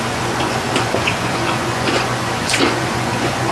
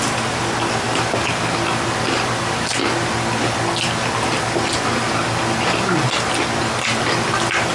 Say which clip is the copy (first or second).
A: first